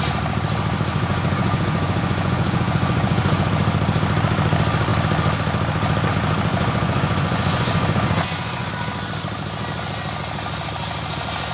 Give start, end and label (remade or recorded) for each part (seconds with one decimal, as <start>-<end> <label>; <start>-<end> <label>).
0.0-0.9 recorded; 0.9-3.5 remade; 3.5-6.5 recorded; 6.5-8.7 remade; 8.7-11.5 recorded